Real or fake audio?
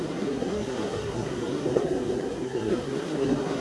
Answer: fake